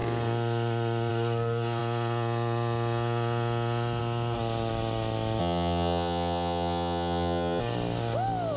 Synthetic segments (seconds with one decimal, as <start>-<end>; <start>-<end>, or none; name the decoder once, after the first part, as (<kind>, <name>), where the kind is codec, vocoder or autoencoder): 5.4-7.6 (vocoder, HiFi-GAN)